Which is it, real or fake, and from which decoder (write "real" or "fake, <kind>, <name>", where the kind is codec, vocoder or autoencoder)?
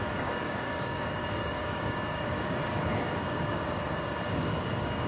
fake, codec, DAC